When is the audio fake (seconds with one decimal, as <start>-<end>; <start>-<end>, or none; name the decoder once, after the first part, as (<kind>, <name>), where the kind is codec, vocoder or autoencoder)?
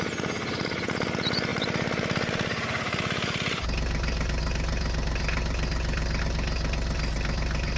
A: none